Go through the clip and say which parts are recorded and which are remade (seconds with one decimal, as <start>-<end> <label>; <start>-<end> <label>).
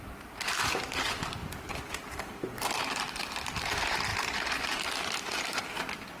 0.0-6.2 remade